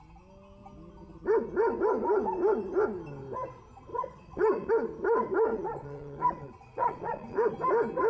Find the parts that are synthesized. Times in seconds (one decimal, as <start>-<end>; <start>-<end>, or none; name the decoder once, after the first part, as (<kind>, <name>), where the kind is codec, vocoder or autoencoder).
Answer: 3.9-4.7 (vocoder, Vocos); 5.5-7.5

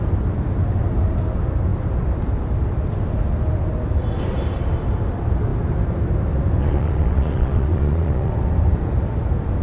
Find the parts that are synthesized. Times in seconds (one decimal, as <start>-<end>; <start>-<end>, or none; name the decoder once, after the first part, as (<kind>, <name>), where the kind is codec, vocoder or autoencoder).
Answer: 6.6-8.3 (vocoder, Vocos)

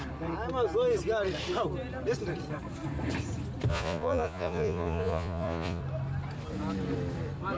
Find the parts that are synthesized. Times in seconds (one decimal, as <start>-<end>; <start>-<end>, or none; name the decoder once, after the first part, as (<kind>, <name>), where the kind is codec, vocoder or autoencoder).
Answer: 3.7-5.8 (vocoder, Vocos)

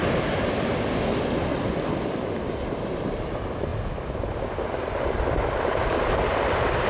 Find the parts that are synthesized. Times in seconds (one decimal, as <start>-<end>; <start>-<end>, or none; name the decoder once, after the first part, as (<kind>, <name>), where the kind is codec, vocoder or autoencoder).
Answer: none

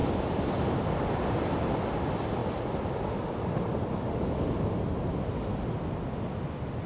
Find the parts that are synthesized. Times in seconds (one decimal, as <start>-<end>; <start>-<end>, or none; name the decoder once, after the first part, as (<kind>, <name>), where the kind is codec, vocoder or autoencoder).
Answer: none

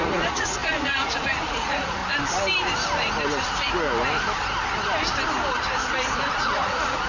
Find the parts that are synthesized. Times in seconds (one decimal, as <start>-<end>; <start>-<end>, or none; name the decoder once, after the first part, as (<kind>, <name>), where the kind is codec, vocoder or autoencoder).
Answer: 0.0-2.0 (vocoder, Vocos); 6.3-7.1

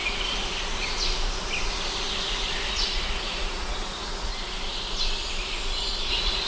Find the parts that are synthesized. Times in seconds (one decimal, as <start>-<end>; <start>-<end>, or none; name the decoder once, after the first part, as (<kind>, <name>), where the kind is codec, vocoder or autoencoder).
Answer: 2.7-4.3 (vocoder, Vocos); 6.1-6.5

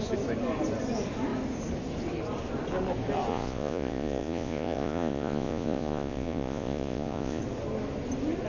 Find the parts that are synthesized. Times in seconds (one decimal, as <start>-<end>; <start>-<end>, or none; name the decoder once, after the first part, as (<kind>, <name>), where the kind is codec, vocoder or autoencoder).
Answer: 3.3-7.4 (vocoder, Vocos)